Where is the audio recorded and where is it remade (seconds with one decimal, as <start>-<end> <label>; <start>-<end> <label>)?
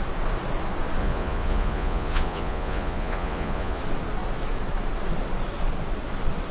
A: 0.0-1.0 recorded; 1.0-3.8 remade; 3.8-6.5 recorded